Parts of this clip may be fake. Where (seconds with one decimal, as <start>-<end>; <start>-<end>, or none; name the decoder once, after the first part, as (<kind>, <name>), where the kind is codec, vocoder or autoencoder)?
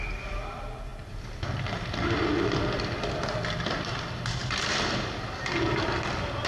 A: none